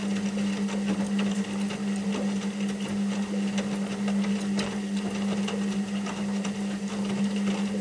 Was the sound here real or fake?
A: real